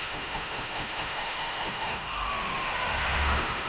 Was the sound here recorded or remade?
remade